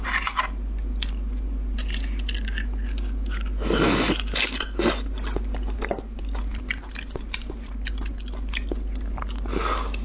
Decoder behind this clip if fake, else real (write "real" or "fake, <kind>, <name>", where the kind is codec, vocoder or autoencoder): real